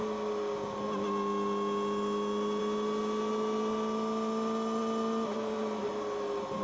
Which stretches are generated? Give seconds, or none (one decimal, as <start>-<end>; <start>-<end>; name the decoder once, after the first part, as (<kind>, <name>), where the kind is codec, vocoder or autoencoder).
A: none